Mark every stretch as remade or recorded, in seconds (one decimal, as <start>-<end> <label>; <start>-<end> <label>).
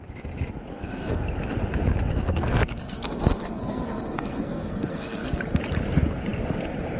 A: 0.0-0.7 recorded; 0.7-1.2 remade; 1.2-2.1 recorded; 2.1-5.4 remade; 5.4-7.0 recorded